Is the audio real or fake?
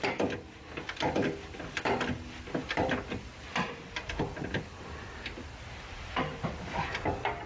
real